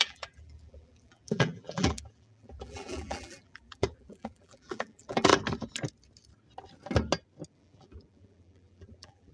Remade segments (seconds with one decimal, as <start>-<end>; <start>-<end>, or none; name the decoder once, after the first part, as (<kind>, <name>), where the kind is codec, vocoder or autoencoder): 0.0-5.3 (vocoder, BigVGAN v2); 7.5-9.3

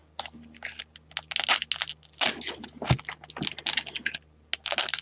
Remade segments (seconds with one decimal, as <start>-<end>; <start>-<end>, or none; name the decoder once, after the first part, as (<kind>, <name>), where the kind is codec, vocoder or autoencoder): none

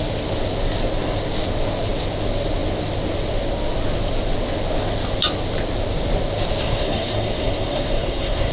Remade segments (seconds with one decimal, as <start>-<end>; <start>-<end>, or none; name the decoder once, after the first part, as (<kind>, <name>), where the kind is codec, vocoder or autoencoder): 6.6-8.5 (codec, SNAC)

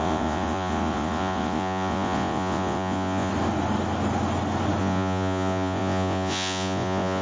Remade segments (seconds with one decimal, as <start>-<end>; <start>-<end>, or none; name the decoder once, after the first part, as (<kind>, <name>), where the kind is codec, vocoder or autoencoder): 0.0-3.3 (vocoder, Vocos); 4.8-7.2

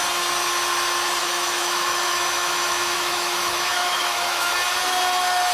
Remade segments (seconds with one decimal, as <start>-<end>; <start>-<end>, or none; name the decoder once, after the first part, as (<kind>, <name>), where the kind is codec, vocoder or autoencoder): 1.2-4.5 (autoencoder, DAC-VAE)